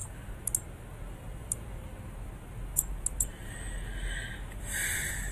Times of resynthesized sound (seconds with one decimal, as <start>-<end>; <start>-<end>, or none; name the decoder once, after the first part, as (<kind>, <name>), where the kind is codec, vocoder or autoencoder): 2.7-3.5 (vocoder, BigVGAN v2)